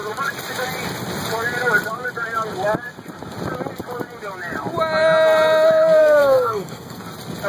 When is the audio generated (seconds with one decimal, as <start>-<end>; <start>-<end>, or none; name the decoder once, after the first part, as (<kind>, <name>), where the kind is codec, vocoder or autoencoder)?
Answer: 6.0-7.0 (codec, SNAC)